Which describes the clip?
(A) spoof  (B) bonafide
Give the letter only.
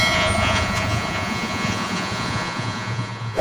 A